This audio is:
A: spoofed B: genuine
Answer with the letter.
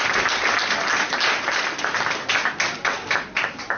B